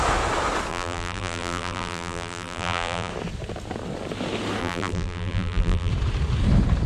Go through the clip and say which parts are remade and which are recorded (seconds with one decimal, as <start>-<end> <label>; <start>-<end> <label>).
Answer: 0.0-0.7 recorded; 0.7-3.1 remade; 3.1-4.6 recorded; 4.6-5.9 remade; 5.9-6.9 recorded